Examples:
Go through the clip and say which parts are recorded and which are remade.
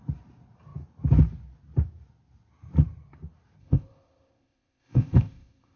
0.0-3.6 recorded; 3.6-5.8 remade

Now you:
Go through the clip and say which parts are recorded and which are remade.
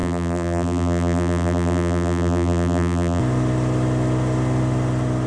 0.0-3.2 remade; 3.2-5.3 recorded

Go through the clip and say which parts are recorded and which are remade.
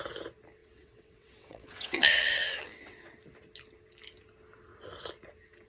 0.0-0.6 recorded; 0.6-3.0 remade; 3.0-5.7 recorded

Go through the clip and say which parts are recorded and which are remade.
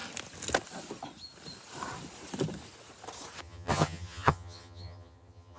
0.0-3.4 recorded; 3.4-5.6 remade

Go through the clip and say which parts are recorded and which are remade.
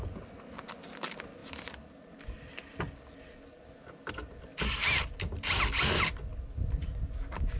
0.0-4.5 recorded; 4.5-5.1 remade; 5.1-7.6 recorded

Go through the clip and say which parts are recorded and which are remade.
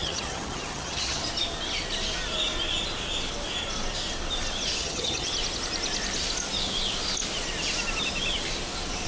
0.0-1.3 remade; 1.3-4.8 recorded; 4.8-5.3 remade; 5.3-9.1 recorded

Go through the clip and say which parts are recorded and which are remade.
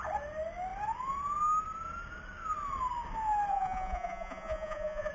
0.0-3.5 recorded; 3.5-5.1 remade